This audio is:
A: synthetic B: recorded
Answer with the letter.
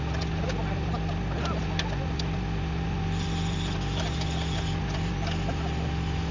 B